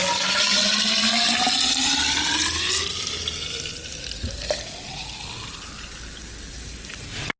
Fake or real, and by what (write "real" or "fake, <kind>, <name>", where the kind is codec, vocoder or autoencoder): real